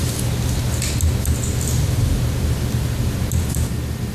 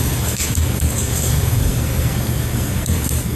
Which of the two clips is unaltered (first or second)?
first